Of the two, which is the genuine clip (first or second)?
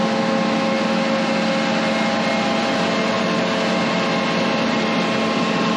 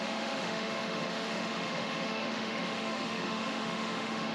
first